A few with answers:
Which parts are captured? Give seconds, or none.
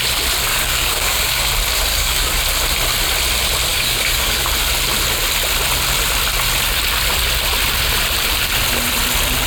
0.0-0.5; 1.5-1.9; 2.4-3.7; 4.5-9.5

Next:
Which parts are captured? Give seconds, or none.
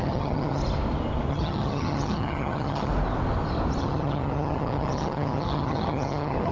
0.6-1.3; 2.9-3.8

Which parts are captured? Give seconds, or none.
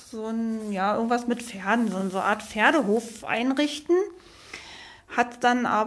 0.0-2.0; 5.0-5.9